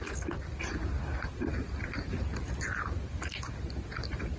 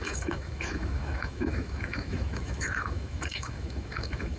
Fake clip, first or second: second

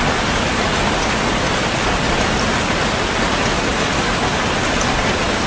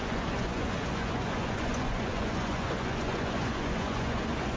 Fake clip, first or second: second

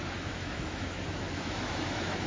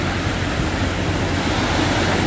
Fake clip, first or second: first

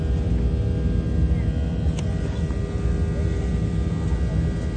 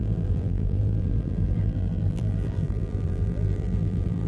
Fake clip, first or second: second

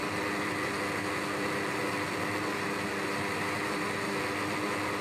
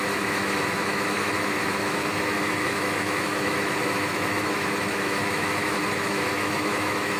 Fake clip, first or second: second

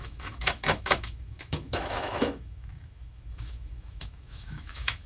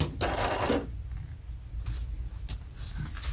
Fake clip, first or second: first